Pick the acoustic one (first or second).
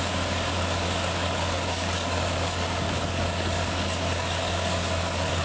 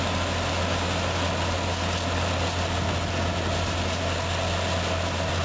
second